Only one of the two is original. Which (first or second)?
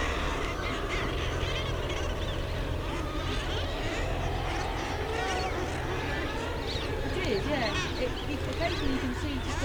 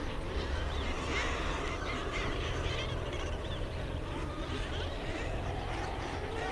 first